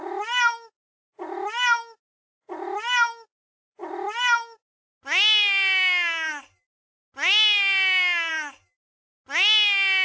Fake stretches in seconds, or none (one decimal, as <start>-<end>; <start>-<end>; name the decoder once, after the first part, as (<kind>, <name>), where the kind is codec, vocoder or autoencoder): none